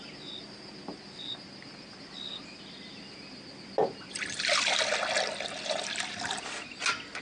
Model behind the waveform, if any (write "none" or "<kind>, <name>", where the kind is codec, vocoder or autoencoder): none